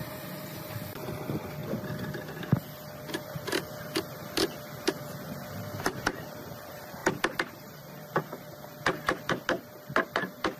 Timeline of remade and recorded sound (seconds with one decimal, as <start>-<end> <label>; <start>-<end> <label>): 0.0-1.6 remade; 1.6-3.1 recorded; 3.1-7.0 remade; 7.0-7.5 recorded; 7.5-10.6 remade